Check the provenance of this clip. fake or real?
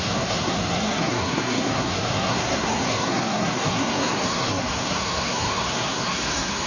fake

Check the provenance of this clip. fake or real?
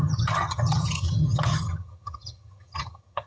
fake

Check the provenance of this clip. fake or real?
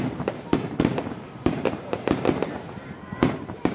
fake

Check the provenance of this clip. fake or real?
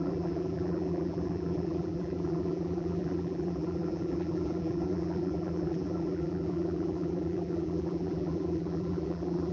fake